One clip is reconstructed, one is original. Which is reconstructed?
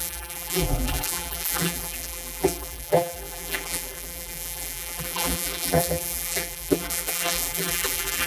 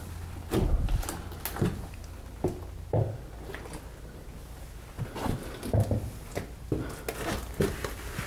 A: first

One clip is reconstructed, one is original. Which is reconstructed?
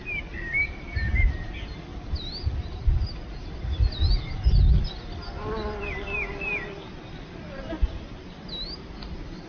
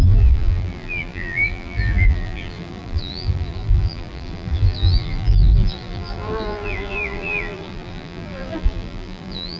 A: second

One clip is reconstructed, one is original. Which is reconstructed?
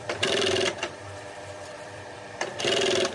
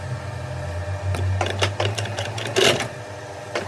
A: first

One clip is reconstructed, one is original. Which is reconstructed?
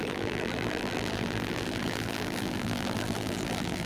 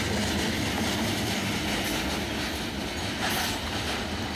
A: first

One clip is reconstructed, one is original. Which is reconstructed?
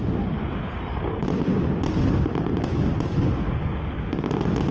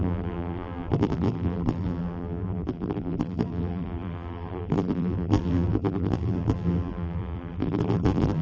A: second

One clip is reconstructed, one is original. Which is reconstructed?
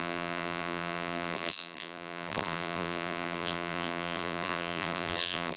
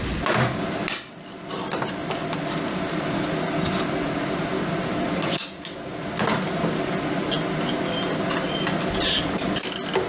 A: first